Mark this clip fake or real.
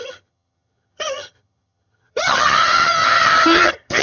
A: fake